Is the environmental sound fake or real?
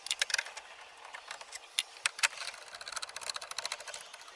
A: real